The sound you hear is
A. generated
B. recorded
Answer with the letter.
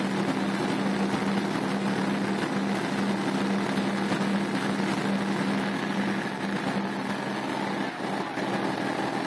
B